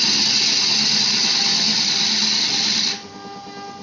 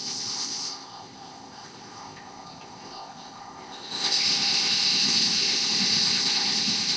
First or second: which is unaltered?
first